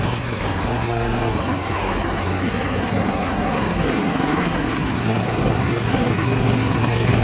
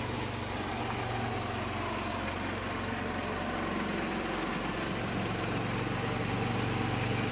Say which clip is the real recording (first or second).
second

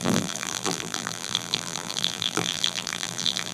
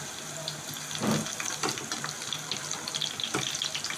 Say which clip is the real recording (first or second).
second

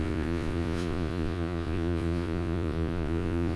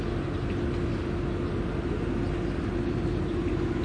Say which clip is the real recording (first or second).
second